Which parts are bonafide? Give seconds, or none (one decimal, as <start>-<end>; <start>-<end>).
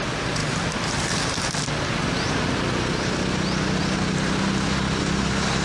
0.0-5.6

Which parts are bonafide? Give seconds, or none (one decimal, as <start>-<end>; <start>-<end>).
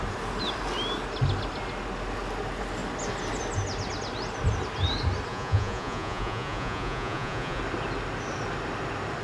0.0-5.3; 7.6-9.2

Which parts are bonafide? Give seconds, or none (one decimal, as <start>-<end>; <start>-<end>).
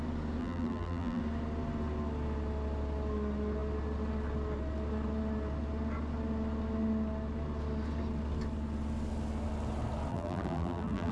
0.0-0.4; 1.2-10.1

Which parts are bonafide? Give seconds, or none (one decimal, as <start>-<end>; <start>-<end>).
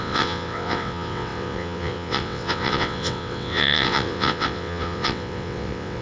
none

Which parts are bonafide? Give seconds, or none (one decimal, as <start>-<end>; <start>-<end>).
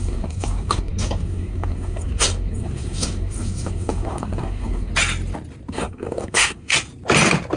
4.9-5.7; 6.7-7.6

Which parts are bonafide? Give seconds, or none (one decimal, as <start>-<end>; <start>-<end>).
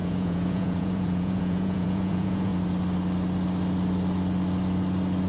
2.5-5.3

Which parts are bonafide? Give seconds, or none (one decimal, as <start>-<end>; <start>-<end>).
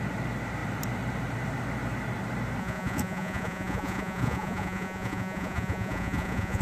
0.0-2.6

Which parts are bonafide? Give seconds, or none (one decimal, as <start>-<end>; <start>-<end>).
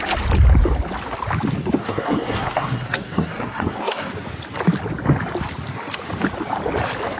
0.0-1.8; 4.1-7.2